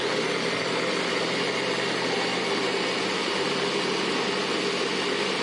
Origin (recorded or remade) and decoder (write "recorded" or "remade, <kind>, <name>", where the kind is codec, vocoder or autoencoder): recorded